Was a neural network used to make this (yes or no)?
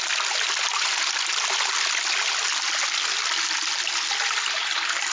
no